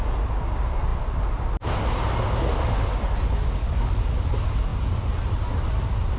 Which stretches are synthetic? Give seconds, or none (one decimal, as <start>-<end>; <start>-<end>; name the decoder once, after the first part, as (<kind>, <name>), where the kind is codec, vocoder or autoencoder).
3.6-4.2 (codec, DAC)